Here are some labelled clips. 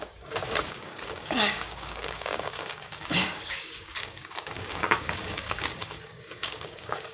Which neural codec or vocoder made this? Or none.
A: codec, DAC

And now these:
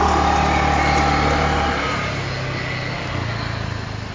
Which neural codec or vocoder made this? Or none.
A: none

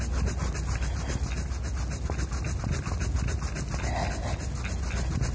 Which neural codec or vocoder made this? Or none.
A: none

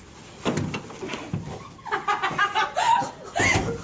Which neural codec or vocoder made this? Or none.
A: none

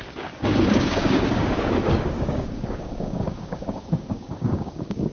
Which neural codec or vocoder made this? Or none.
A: codec, DAC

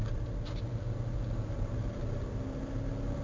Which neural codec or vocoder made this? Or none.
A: none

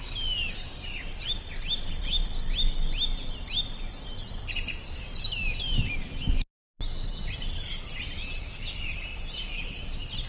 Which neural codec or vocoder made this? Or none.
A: none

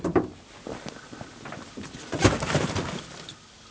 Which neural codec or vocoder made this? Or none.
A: none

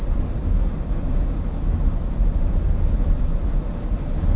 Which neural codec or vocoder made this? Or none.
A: none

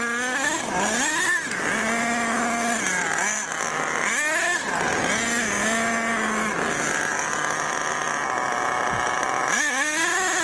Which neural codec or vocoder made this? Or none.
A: none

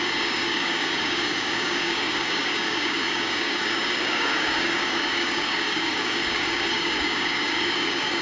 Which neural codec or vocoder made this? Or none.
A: codec, DAC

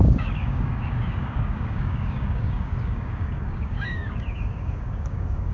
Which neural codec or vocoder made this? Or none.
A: codec, DAC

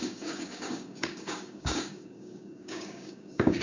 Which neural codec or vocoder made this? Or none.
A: codec, DAC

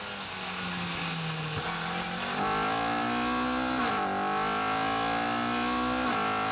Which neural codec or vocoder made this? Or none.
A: none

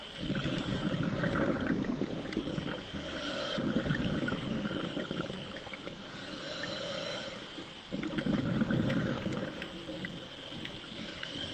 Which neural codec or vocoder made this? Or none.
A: codec, DAC